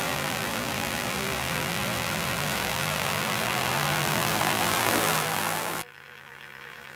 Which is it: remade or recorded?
remade